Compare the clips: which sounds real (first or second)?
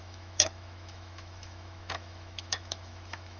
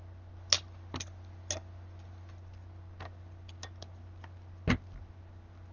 second